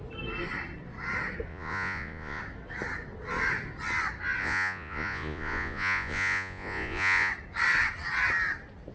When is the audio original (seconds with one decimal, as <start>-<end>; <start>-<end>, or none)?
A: 0.0-1.5; 2.4-4.4; 7.3-8.9